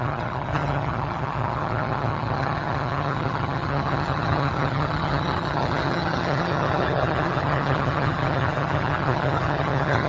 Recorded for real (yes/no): no